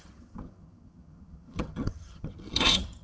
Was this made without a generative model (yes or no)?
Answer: no